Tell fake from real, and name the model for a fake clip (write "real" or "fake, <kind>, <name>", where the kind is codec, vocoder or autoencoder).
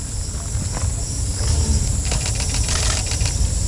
real